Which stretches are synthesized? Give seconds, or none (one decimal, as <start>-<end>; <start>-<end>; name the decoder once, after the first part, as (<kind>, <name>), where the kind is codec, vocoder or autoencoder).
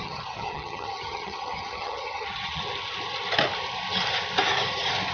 0.0-2.6 (vocoder, HiFi-GAN)